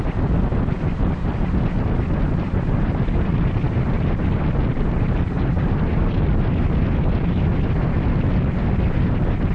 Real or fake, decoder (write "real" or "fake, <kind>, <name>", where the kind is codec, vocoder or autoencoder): real